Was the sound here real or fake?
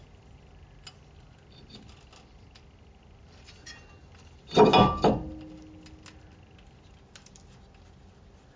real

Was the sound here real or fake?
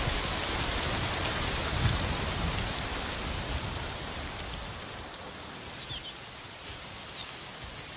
real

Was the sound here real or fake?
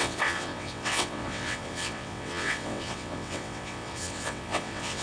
fake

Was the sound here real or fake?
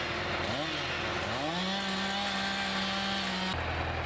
real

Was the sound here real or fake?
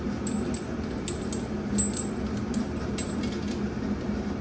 real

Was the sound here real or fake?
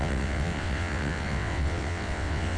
fake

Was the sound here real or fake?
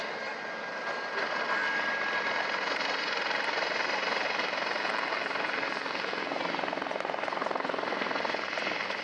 real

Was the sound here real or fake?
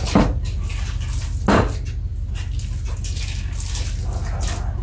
real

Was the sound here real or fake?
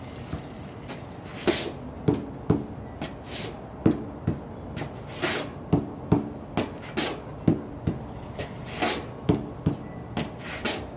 real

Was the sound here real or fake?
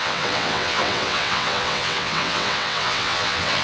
fake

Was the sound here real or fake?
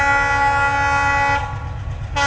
real